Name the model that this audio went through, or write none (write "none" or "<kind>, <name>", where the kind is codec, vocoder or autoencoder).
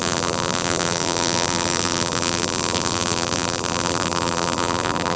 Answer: vocoder, BigVGAN v2